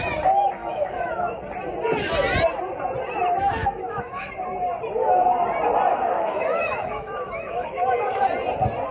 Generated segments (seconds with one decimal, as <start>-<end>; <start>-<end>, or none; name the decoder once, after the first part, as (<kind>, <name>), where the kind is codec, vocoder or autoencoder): 0.6-1.4 (autoencoder, DAC-VAE); 3.6-4.2; 5.9-8.2